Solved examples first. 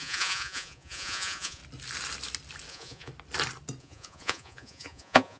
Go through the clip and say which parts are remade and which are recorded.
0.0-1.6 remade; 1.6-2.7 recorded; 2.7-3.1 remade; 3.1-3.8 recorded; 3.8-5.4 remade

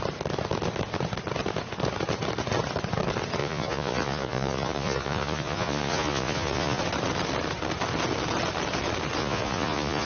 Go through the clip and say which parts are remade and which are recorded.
0.0-3.4 recorded; 3.4-6.8 remade; 6.8-9.2 recorded; 9.2-10.1 remade

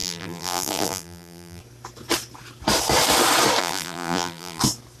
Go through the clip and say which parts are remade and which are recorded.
0.0-1.6 remade; 1.6-3.6 recorded; 3.6-4.6 remade; 4.6-5.0 recorded

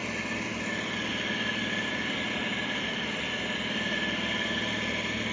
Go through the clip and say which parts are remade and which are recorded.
0.0-5.3 recorded

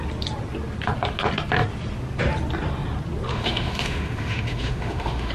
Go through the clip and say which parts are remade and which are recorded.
0.0-3.3 recorded; 3.3-5.3 remade

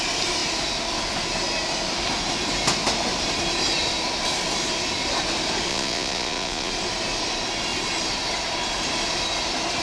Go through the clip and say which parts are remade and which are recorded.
0.0-5.7 recorded; 5.7-6.7 remade; 6.7-9.8 recorded

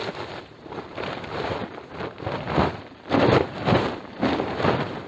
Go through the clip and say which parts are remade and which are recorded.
0.0-1.6 remade; 1.6-2.4 recorded; 2.4-5.1 remade

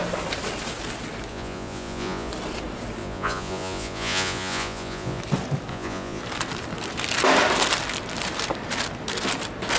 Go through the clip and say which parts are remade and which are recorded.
0.0-1.3 recorded; 1.3-2.3 remade; 2.3-3.0 recorded; 3.0-5.2 remade; 5.2-5.7 recorded; 5.7-6.2 remade; 6.2-9.8 recorded